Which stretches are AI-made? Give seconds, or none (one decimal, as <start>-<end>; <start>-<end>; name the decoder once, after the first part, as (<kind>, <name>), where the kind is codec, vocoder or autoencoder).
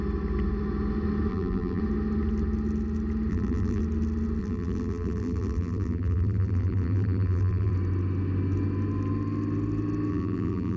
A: 1.3-1.8 (vocoder, BigVGAN v2); 3.3-3.8; 4.4-7.7; 10.1-10.8